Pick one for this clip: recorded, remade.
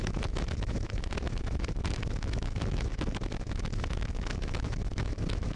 remade